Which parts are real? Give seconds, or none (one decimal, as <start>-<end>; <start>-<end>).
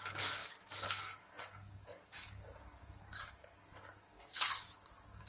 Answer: none